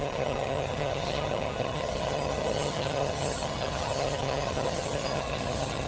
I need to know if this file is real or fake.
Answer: fake